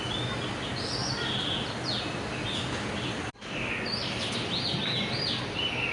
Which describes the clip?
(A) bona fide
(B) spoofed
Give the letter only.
A